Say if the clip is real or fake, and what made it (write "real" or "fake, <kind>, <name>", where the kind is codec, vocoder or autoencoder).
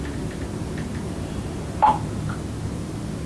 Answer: real